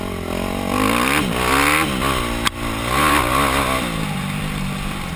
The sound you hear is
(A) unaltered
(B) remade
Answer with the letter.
A